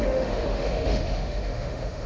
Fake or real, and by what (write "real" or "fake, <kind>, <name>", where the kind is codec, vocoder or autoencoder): fake, autoencoder, DAC-VAE